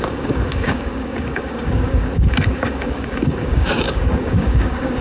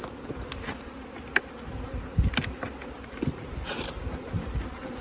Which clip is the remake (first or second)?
first